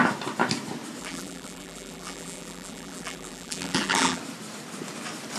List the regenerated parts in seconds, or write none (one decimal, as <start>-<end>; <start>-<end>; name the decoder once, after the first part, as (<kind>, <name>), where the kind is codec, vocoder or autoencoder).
1.0-4.2 (vocoder, BigVGAN v2)